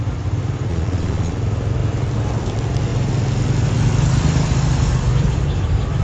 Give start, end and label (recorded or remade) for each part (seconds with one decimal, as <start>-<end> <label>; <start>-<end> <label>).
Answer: 0.0-0.7 recorded; 0.7-1.3 remade; 1.3-6.0 recorded